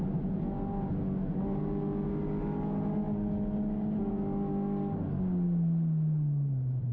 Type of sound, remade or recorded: recorded